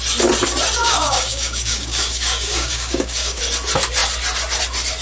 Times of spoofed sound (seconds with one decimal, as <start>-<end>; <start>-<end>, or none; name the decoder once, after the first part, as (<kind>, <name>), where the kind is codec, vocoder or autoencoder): 0.8-3.4 (codec, DAC)